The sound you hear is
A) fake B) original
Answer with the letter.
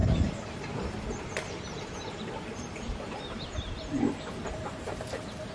A